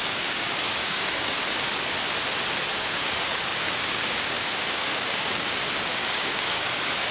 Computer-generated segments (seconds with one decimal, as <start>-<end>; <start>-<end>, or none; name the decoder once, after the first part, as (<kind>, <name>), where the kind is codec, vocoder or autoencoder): 0.0-1.7 (codec, DAC); 2.7-7.1